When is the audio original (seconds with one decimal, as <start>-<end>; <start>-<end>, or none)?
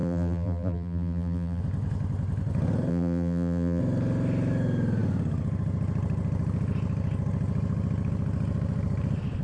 1.6-2.9; 3.8-9.4